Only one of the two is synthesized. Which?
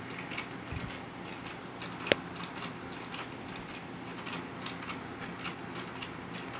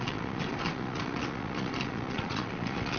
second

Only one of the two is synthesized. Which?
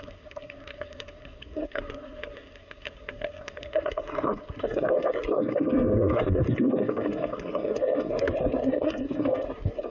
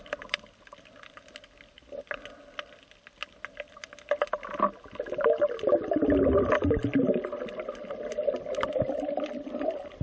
first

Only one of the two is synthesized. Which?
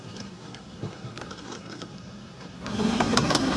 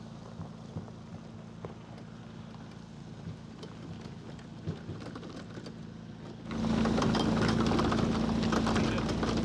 first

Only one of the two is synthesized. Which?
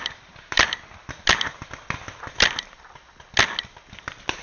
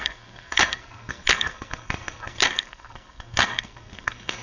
second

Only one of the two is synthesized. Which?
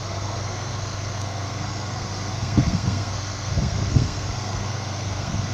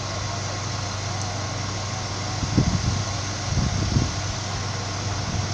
first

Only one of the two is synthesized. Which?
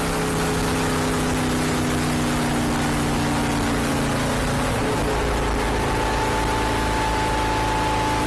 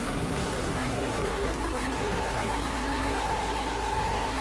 second